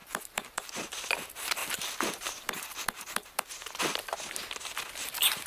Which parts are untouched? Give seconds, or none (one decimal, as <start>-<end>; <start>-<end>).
0.7-1.6; 3.7-5.5

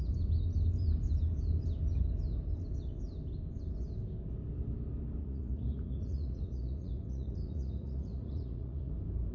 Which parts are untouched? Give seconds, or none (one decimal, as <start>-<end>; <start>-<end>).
0.0-5.2; 8.9-9.3

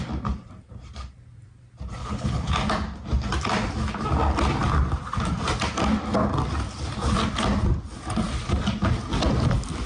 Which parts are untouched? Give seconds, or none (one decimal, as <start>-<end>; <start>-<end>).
0.0-2.0; 2.5-9.9

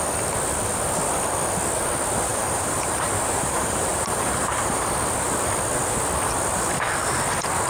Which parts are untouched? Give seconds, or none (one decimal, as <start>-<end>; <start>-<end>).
0.0-2.3; 4.9-7.7

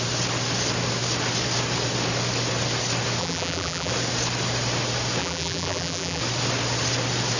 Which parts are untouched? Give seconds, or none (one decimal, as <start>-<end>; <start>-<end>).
0.0-3.2; 3.9-5.2; 6.2-7.4

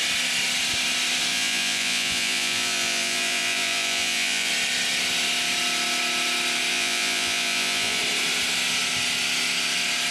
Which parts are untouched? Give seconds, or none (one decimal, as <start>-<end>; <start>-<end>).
0.0-1.3; 4.5-6.7; 8.0-10.1

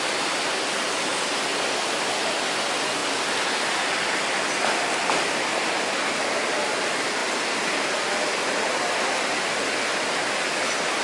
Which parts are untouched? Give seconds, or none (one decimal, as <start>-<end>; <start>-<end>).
0.0-3.0; 4.7-7.2